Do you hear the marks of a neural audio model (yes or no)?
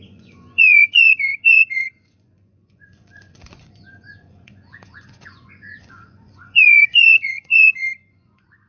yes